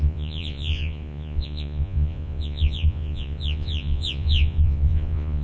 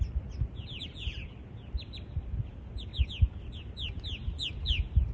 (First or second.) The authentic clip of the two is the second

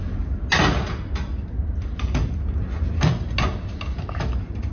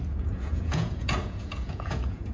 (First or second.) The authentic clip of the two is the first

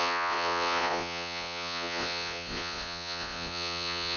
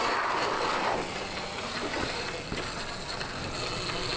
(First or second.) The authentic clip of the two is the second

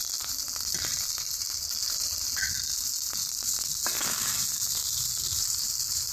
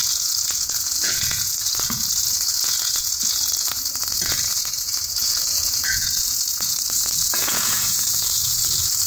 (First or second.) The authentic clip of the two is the first